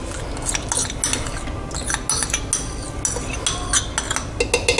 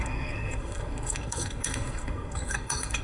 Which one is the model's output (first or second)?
second